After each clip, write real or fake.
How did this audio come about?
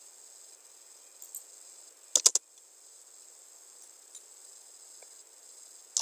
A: real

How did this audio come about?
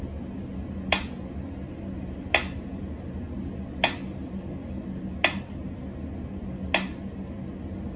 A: real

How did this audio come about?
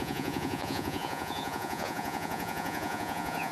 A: fake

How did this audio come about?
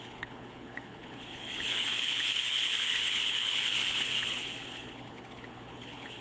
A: fake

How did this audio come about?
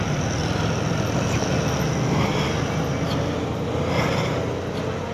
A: real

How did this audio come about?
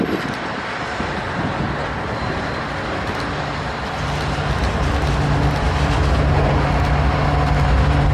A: real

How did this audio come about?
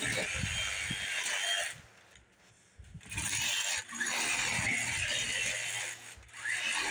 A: real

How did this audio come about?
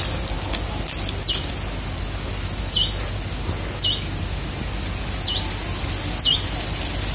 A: real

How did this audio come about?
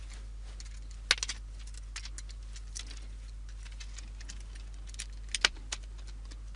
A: real